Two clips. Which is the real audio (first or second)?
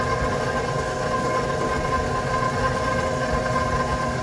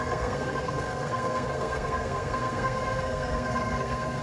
first